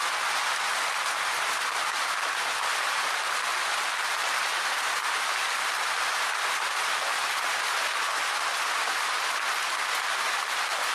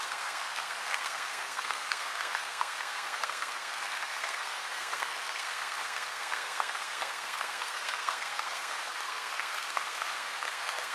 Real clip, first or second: first